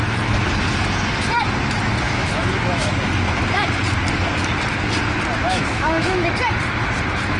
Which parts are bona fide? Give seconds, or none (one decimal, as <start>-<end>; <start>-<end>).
0.0-2.2; 2.9-5.4; 6.3-7.4